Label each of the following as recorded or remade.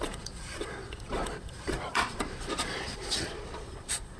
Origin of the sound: remade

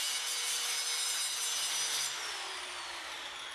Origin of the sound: recorded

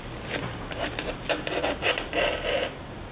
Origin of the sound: recorded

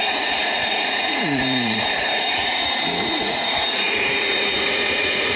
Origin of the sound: remade